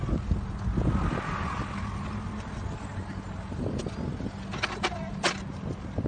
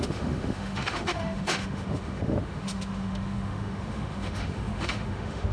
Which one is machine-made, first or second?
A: second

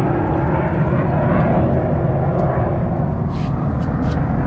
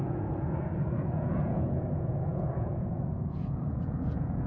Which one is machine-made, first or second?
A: second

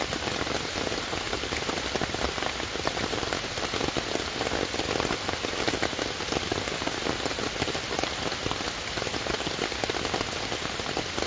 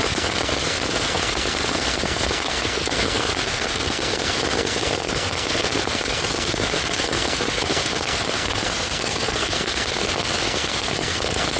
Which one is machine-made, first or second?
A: second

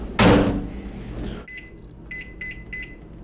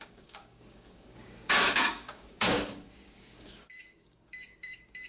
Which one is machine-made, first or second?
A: second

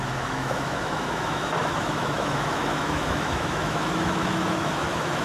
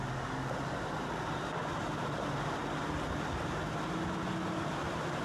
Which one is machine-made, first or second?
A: first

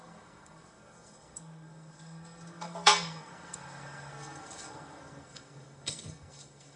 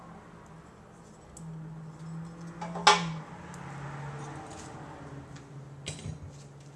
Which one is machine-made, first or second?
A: first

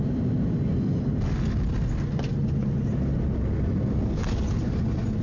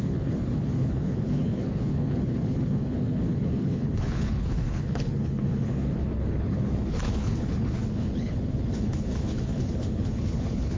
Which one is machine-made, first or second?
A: second